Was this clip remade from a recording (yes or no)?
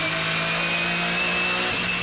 no